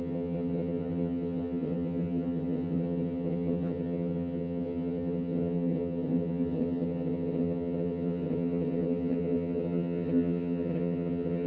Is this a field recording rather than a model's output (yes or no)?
no